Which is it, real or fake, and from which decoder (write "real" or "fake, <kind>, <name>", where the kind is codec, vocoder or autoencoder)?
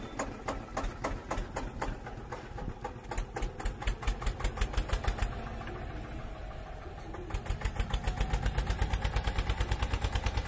real